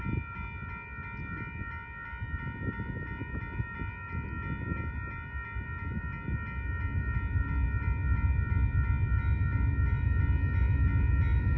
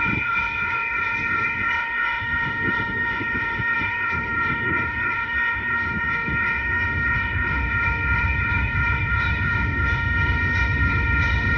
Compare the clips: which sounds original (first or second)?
first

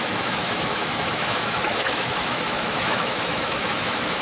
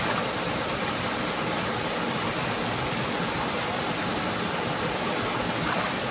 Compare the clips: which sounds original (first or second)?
second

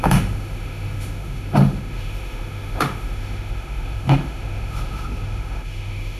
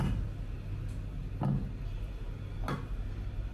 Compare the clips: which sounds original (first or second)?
second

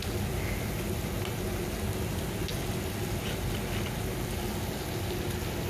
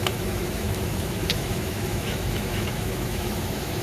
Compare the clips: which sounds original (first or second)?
first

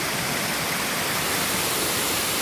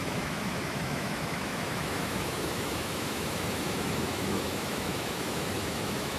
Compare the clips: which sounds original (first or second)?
first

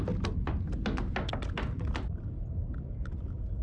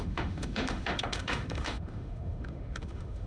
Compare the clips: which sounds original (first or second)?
first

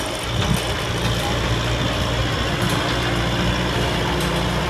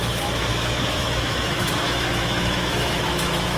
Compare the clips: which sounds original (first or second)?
first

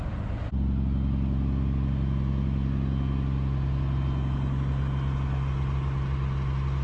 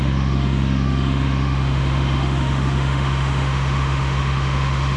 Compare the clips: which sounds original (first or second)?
first